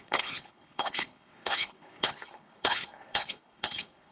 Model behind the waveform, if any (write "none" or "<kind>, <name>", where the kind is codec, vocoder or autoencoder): codec, HILCodec